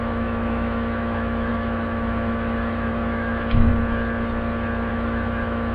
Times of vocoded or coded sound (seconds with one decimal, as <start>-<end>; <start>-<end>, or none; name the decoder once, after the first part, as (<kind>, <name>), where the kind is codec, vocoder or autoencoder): 0.0-3.7 (autoencoder, DAC-VAE); 4.9-5.7